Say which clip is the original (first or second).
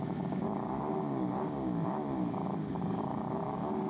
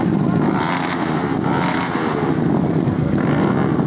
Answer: second